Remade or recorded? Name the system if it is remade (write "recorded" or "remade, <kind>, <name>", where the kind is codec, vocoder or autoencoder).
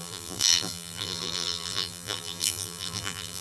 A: remade, vocoder, BigVGAN v2